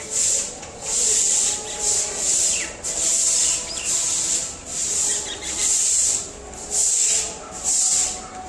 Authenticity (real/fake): real